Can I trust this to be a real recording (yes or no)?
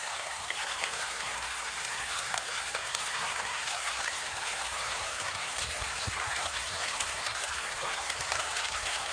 no